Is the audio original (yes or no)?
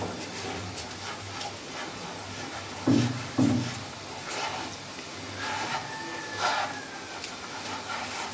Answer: yes